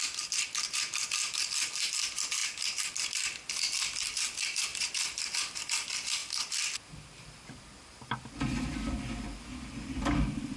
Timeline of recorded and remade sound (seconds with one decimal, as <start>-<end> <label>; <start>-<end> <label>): 0.0-10.6 recorded